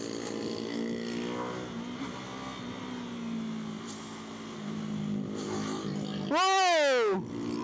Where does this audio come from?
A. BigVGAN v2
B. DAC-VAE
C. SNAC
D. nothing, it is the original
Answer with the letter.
D